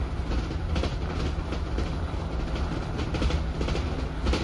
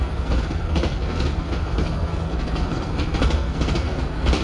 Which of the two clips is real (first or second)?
first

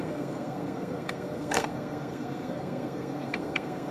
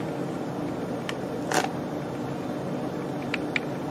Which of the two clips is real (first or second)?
second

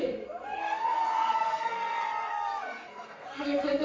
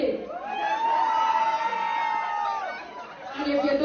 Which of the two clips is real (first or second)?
second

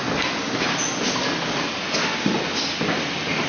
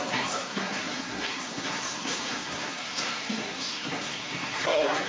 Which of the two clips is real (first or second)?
first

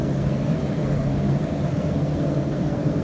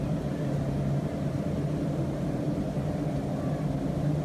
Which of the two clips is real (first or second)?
second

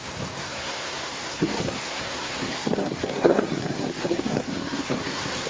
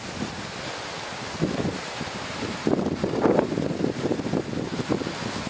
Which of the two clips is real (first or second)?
second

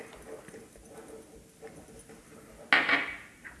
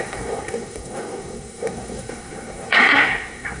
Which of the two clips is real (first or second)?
first